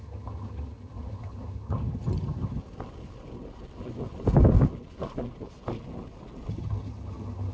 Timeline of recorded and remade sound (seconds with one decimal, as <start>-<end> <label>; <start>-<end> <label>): 0.0-2.6 remade; 2.6-6.5 recorded; 6.5-7.5 remade